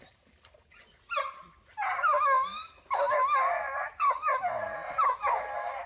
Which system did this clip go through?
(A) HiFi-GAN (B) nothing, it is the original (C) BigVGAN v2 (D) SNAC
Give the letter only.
B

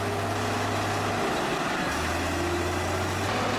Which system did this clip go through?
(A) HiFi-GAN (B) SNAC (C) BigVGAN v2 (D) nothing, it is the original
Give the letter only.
D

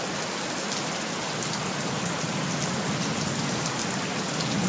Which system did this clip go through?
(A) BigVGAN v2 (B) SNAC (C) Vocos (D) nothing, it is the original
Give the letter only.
D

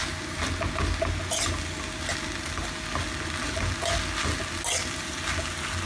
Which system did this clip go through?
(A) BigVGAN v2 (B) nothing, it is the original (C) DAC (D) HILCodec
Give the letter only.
B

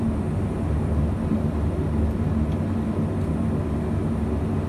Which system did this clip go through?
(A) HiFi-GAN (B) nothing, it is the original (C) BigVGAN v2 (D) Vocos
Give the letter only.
B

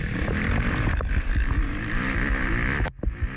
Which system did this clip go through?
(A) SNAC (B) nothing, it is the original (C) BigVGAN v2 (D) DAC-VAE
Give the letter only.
C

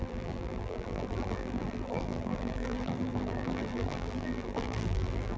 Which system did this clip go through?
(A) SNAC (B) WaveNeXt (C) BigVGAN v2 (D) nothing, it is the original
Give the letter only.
C